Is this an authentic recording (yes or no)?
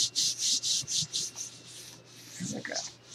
yes